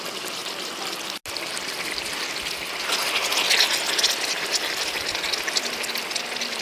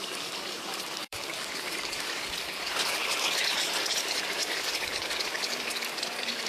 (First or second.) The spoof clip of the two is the second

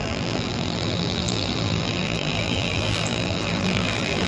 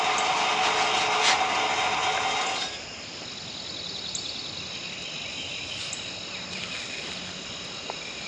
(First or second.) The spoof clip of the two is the first